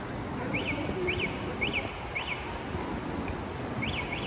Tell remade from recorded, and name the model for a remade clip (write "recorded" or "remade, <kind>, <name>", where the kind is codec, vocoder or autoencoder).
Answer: recorded